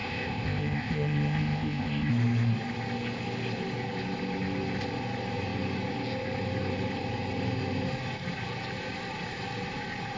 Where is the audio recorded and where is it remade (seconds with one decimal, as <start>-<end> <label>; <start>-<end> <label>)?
0.0-2.1 remade; 2.1-10.2 recorded

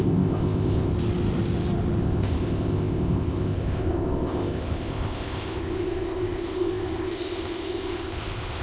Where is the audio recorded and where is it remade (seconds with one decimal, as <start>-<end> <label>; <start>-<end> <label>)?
0.0-0.9 remade; 0.9-2.0 recorded; 2.0-8.6 remade

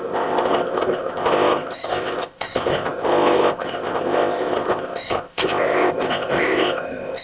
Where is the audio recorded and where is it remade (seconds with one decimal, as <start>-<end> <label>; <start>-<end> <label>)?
0.0-7.2 remade

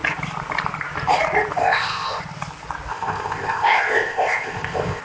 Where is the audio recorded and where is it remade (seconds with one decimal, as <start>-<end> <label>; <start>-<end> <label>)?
0.0-1.6 recorded; 1.6-2.2 remade; 2.2-2.9 recorded; 2.9-5.0 remade

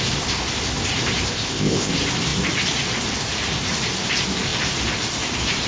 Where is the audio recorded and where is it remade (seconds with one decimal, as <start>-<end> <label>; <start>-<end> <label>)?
0.0-1.3 recorded; 1.3-1.9 remade; 1.9-5.7 recorded

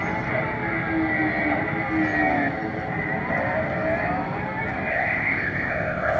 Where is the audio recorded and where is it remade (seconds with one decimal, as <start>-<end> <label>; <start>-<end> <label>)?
0.0-4.9 recorded; 4.9-6.2 remade